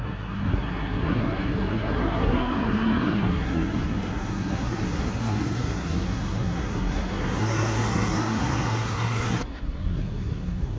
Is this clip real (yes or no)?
no